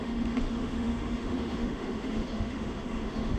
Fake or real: fake